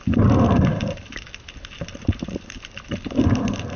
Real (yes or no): yes